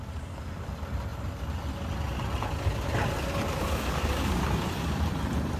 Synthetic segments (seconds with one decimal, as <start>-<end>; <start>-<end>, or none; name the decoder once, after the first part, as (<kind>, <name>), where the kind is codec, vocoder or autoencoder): 3.6-4.4 (codec, DAC)